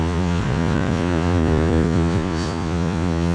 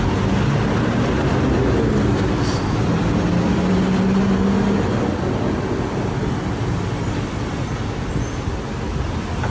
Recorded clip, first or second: second